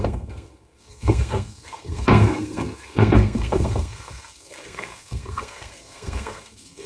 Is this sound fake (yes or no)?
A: yes